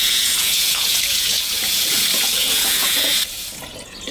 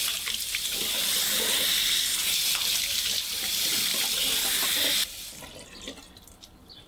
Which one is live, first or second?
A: second